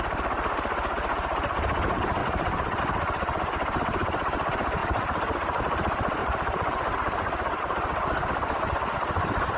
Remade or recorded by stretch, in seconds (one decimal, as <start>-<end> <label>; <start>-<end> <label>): 0.0-2.2 recorded; 2.2-2.8 remade; 2.8-4.8 recorded; 4.8-5.6 remade; 5.6-6.2 recorded; 6.2-7.6 remade; 7.6-9.6 recorded